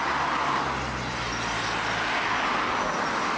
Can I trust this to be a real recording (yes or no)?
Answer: yes